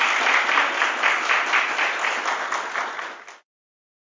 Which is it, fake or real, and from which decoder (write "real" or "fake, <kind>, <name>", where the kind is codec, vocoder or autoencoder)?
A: real